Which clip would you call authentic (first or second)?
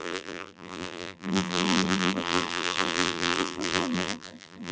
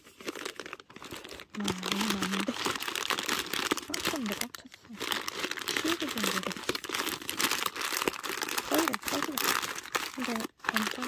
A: second